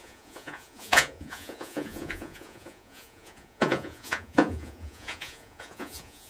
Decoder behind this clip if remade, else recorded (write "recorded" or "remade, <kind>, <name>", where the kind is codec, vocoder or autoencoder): remade, vocoder, Vocos